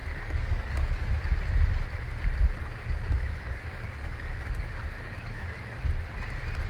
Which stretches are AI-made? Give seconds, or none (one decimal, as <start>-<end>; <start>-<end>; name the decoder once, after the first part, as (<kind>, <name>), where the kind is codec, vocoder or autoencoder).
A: 0.0-1.1 (codec, DAC); 2.6-5.8